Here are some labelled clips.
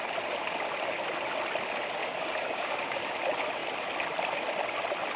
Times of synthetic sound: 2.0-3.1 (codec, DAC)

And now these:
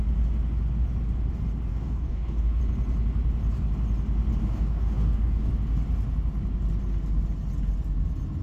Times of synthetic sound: 1.7-2.6 (codec, DAC); 4.4-5.5

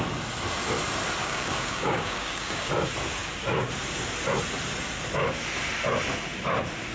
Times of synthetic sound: 1.2-2.7 (codec, DAC)